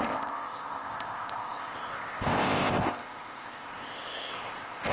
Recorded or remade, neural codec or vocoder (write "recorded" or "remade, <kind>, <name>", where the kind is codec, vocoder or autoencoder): remade, codec, ZipCodec